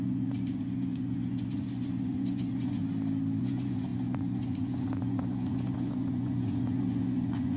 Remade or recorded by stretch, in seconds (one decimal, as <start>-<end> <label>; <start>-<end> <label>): 0.0-2.8 remade; 2.8-3.4 recorded; 3.4-7.6 remade